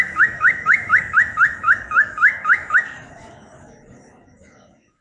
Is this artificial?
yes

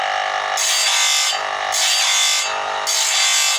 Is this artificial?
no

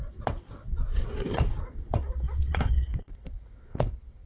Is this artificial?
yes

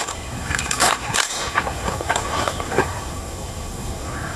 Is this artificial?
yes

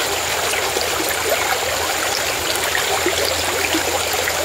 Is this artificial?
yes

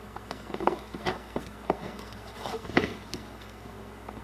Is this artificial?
yes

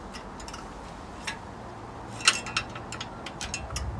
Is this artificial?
no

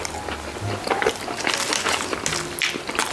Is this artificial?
no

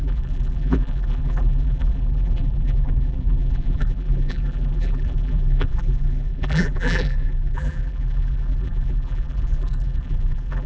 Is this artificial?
yes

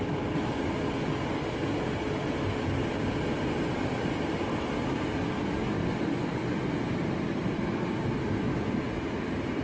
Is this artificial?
no